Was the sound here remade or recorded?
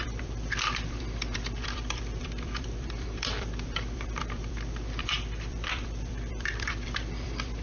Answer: remade